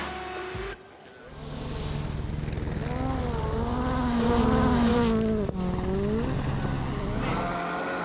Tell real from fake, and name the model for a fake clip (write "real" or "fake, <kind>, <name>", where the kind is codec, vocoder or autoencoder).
real